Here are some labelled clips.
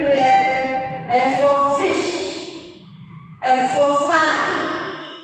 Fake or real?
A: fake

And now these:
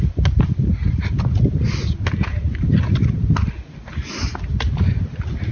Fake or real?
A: real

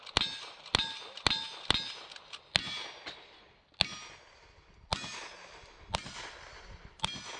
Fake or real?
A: real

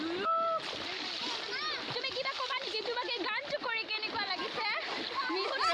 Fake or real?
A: real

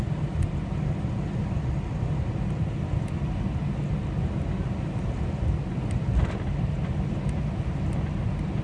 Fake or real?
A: real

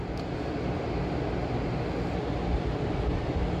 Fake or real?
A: real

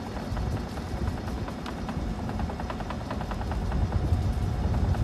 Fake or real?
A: real